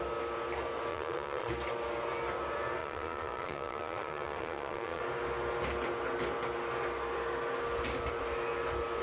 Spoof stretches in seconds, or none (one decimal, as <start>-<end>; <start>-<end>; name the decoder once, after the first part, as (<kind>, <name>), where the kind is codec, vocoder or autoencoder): 0.9-1.5 (vocoder, Vocos); 2.8-5.0